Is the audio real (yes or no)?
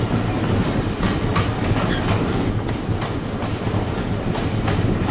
yes